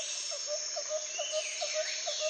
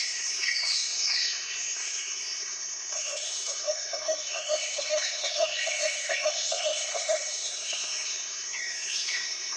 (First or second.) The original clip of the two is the first